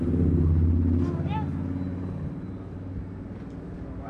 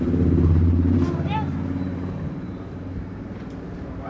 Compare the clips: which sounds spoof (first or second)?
second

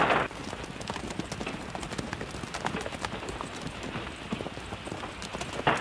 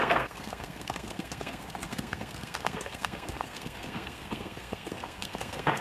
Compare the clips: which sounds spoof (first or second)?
second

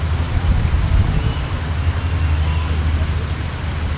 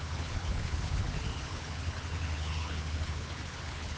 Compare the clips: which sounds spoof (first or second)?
second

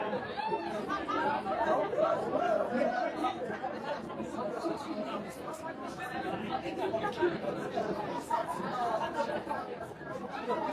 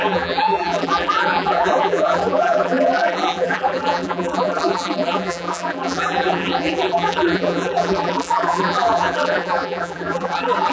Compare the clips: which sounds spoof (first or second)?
second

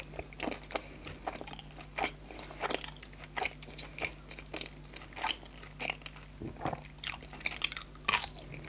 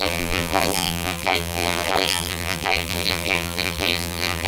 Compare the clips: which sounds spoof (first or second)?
second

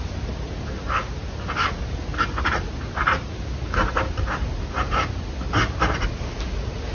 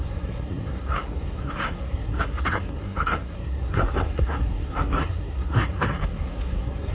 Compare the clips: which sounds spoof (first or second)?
second